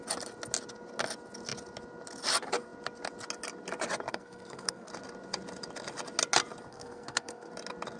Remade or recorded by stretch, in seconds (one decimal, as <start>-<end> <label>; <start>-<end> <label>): 0.0-4.1 recorded; 4.1-4.9 remade; 4.9-6.7 recorded; 6.7-7.5 remade; 7.5-8.0 recorded